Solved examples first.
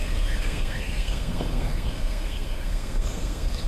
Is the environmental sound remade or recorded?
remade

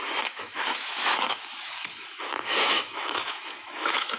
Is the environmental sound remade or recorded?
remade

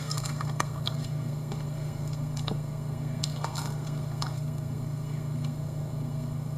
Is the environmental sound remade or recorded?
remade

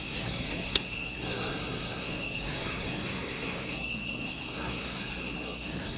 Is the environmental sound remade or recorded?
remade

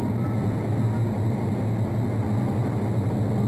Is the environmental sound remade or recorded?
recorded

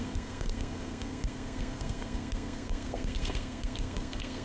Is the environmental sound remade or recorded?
remade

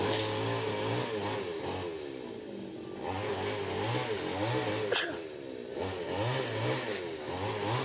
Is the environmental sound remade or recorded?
recorded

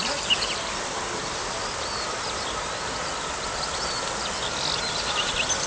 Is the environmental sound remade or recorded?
recorded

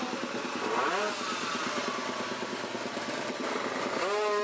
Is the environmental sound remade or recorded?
recorded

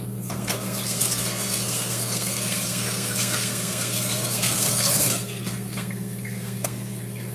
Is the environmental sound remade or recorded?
remade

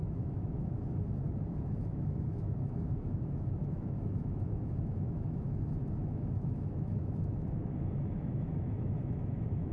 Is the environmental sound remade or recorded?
remade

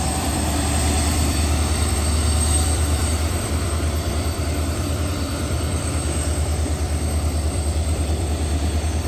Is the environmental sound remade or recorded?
remade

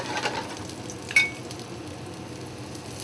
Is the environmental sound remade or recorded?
recorded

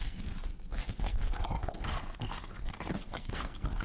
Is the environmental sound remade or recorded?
remade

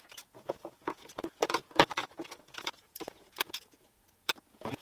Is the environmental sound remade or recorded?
remade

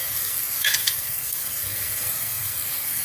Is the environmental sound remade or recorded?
remade